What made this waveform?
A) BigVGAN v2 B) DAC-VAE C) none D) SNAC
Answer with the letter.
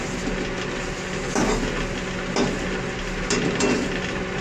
C